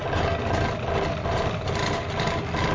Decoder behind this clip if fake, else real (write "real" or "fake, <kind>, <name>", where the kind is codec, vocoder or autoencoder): real